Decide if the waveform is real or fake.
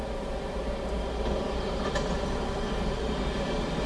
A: real